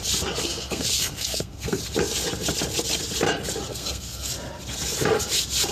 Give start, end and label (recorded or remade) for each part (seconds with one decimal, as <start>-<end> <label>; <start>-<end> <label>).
0.0-0.4 recorded; 0.4-1.8 remade; 1.8-3.7 recorded; 3.7-4.3 remade; 4.3-5.7 recorded